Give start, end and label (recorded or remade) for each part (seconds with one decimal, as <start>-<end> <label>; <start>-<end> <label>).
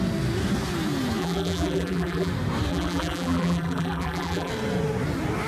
0.0-1.2 recorded; 1.2-2.3 remade; 2.3-2.7 recorded; 2.7-4.5 remade; 4.5-5.5 recorded